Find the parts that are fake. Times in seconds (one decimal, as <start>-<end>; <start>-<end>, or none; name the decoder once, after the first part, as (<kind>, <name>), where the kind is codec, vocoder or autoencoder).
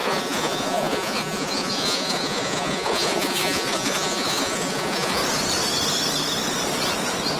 0.0-5.2 (vocoder, Vocos)